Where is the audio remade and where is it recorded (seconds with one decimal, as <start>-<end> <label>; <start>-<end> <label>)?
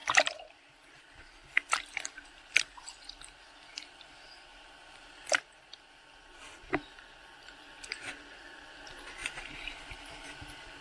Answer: 0.0-1.0 remade; 1.0-4.5 recorded; 4.5-5.7 remade; 5.7-9.2 recorded; 9.2-9.8 remade; 9.8-10.8 recorded